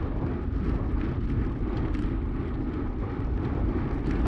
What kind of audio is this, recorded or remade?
recorded